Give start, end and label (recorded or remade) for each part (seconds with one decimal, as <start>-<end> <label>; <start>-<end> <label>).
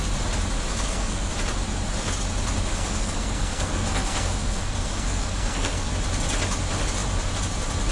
0.0-0.7 recorded; 0.7-1.3 remade; 1.3-2.7 recorded; 2.7-5.9 remade; 5.9-7.9 recorded